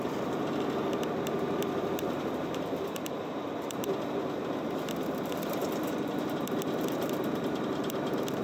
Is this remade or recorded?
remade